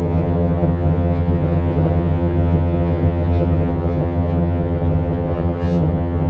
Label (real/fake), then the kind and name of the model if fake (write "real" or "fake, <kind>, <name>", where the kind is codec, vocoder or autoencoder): fake, vocoder, HiFi-GAN